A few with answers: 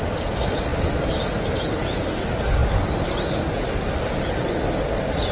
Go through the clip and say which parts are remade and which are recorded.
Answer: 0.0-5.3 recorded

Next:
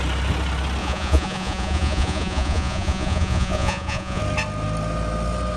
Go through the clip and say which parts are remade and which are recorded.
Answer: 0.0-0.8 recorded; 0.8-4.2 remade; 4.2-5.6 recorded

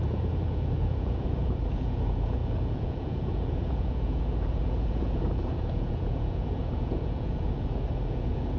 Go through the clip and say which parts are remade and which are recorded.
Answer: 0.0-8.6 remade

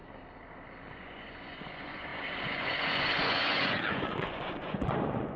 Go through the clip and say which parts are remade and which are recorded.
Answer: 0.0-0.9 recorded; 0.9-5.4 remade

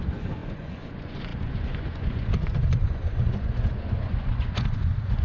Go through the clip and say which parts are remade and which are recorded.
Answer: 0.0-5.2 remade

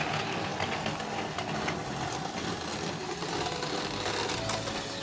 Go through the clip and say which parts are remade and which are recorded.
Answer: 0.0-5.0 recorded

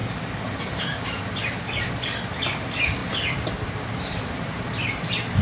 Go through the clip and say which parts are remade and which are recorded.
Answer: 0.0-5.4 recorded